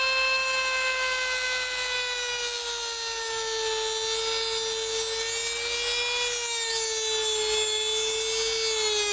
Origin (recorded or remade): recorded